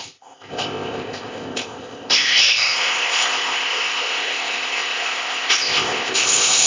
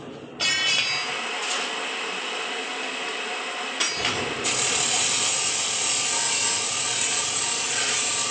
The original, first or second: second